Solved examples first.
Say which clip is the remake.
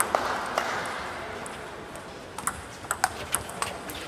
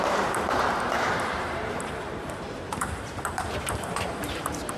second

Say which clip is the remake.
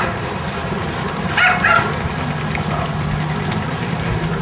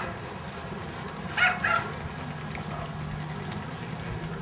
first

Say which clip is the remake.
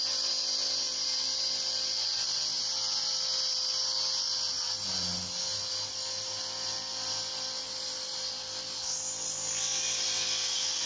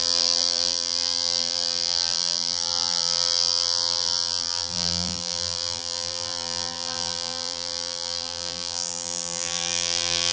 second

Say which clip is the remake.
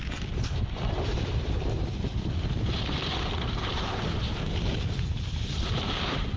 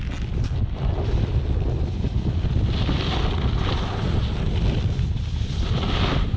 first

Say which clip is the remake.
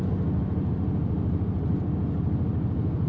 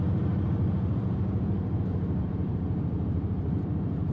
second